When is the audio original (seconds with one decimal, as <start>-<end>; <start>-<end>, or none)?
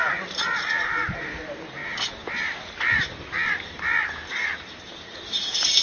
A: 1.8-2.7